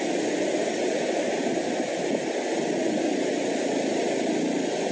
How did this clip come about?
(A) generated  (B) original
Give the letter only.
B